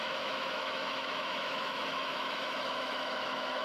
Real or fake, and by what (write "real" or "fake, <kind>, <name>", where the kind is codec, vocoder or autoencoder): fake, autoencoder, DAC-VAE